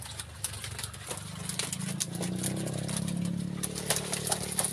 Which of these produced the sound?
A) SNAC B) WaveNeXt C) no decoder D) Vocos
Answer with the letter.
C